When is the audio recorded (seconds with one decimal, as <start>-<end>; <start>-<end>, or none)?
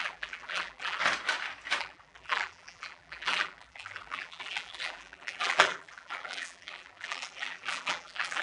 1.0-1.8